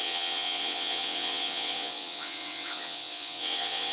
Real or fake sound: fake